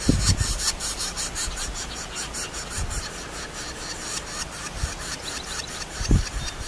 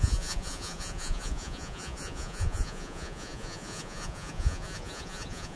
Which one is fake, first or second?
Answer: second